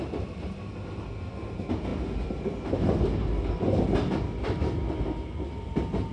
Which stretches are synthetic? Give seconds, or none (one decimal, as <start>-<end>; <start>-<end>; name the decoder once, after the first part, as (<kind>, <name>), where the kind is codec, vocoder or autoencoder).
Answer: none